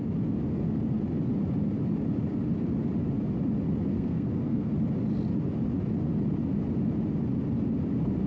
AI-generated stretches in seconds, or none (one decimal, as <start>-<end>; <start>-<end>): 3.9-4.7